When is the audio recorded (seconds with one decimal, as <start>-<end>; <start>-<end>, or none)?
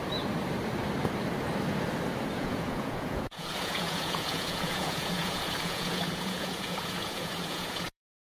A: 0.0-2.3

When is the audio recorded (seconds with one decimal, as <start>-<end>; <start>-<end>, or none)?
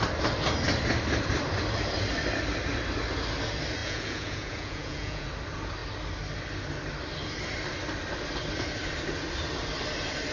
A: 0.0-3.8; 5.3-10.3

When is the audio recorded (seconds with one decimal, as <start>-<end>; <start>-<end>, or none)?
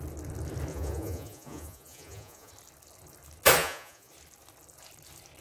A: 0.0-0.7; 2.5-3.6; 4.1-5.4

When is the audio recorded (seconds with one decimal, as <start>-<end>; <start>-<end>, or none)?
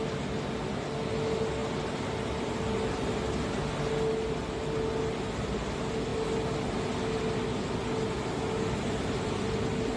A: 0.0-10.0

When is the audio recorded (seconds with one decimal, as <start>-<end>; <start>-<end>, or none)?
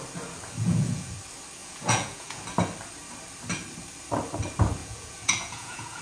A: 0.0-0.6; 1.1-1.6; 2.4-4.8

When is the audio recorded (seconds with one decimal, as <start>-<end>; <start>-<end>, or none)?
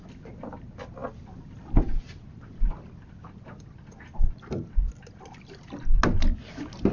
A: 0.0-6.9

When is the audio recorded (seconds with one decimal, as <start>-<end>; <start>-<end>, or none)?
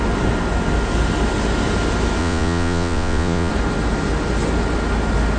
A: 0.0-2.2; 3.5-5.4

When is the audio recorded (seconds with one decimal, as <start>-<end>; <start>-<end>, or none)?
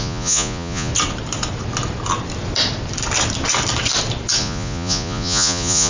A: 0.9-4.4